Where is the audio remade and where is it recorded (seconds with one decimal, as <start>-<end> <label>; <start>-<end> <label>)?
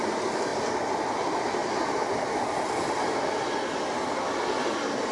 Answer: 0.0-5.1 recorded